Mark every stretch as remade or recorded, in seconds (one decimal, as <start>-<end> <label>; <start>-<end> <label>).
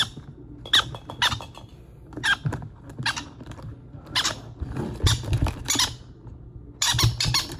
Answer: 0.0-7.6 recorded